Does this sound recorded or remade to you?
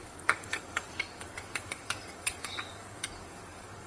remade